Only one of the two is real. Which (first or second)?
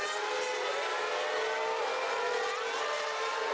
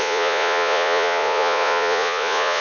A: first